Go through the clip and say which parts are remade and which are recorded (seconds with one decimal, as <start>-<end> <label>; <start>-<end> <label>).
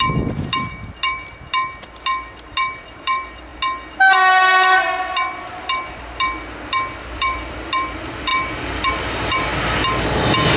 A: 0.0-3.5 remade; 3.5-7.0 recorded; 7.0-9.5 remade; 9.5-10.1 recorded; 10.1-10.6 remade